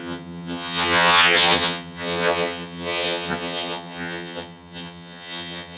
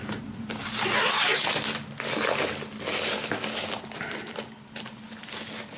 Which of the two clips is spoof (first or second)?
first